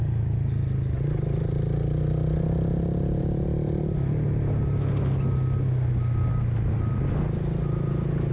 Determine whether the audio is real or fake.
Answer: real